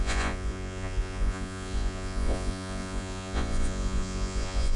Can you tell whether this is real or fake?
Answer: fake